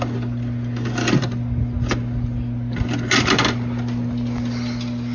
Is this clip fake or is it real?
real